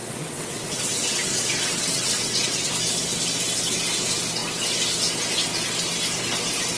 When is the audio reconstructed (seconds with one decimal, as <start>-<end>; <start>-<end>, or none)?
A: 0.0-2.7